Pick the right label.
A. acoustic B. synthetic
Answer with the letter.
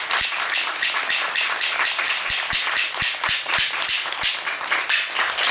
A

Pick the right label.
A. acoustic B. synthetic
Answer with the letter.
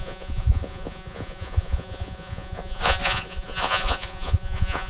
B